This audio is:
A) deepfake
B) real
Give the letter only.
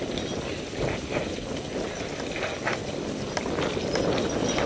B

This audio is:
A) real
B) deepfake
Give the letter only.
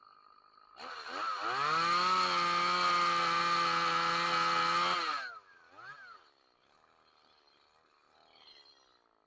A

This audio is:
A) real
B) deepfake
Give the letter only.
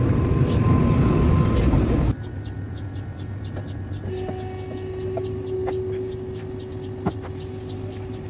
A